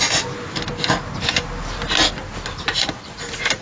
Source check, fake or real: real